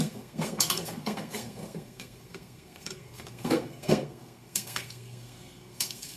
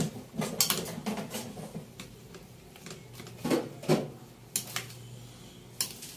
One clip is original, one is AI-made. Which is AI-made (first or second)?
first